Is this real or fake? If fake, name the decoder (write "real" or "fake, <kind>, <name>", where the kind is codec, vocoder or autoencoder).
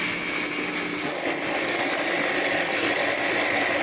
real